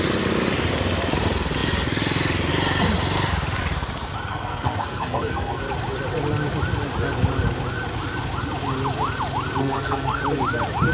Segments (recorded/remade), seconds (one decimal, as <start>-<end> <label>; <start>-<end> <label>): 0.0-4.3 recorded; 4.3-5.6 remade; 5.6-9.6 recorded; 9.6-10.2 remade; 10.2-10.9 recorded